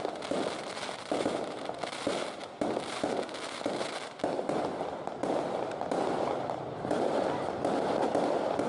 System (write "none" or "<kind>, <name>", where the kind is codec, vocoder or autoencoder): vocoder, BigVGAN v2